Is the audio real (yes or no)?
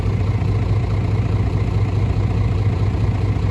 yes